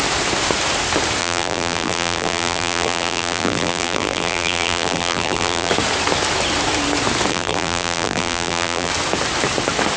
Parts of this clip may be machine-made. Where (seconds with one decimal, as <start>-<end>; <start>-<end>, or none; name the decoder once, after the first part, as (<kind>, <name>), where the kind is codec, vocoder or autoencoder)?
1.2-5.7 (vocoder, BigVGAN v2); 7.3-8.9